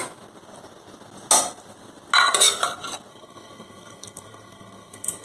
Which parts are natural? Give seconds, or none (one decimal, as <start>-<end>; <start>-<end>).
0.0-3.1